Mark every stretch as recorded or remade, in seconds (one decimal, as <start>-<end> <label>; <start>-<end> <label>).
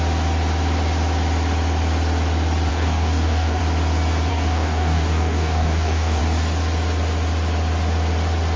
0.0-2.7 recorded; 2.7-3.6 remade; 3.6-4.3 recorded; 4.3-6.2 remade; 6.2-8.6 recorded